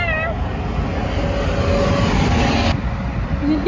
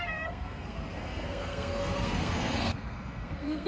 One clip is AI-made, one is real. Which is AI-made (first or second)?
second